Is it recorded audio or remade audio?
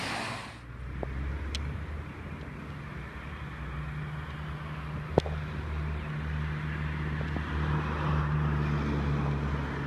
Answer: recorded